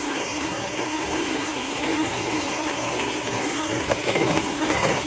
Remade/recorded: remade